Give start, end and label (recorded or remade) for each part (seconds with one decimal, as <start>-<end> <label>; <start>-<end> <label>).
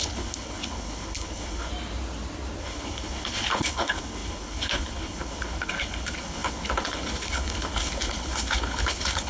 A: 0.0-1.7 remade; 1.7-2.6 recorded; 2.6-9.3 remade